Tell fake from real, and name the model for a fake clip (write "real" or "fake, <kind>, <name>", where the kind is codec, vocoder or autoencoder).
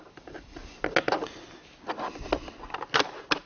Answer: real